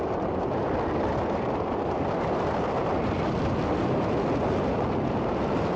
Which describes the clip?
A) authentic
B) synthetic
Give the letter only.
B